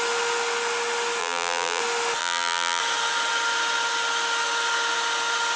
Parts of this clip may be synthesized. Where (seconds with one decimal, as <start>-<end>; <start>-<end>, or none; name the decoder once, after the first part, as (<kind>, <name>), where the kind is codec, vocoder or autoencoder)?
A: 1.2-1.8 (vocoder, BigVGAN v2); 2.2-2.8